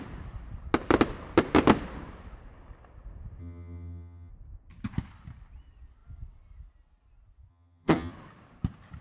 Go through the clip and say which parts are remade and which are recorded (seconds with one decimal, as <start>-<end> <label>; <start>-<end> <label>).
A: 0.0-3.4 recorded; 3.4-4.3 remade; 4.3-7.5 recorded; 7.5-8.1 remade; 8.1-9.0 recorded